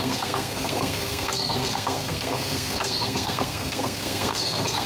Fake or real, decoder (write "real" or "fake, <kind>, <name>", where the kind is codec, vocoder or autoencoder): fake, codec, SNAC